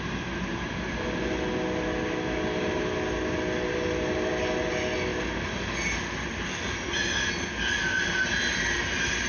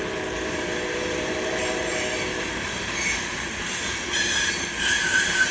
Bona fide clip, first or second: first